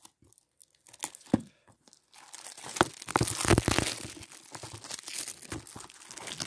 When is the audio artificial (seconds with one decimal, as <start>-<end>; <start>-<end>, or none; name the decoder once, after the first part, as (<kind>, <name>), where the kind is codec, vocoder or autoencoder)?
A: none